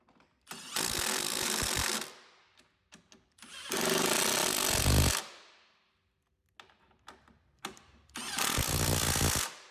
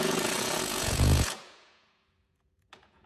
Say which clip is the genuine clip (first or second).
first